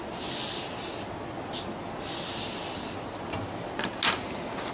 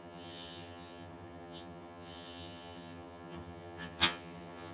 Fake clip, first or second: second